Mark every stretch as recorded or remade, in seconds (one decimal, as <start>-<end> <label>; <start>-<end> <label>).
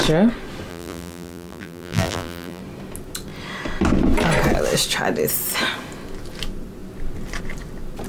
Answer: 0.0-0.7 recorded; 0.7-2.6 remade; 2.6-8.1 recorded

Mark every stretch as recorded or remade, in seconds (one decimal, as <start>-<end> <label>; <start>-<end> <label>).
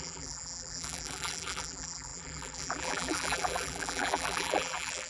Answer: 0.0-5.1 remade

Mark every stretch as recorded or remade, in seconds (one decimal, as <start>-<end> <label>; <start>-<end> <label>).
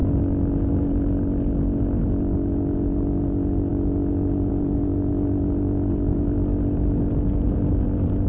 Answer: 0.0-8.3 recorded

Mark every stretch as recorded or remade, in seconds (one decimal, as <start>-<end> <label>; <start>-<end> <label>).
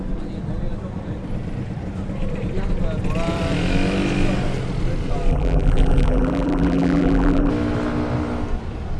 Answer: 0.0-5.3 recorded; 5.3-7.5 remade; 7.5-9.0 recorded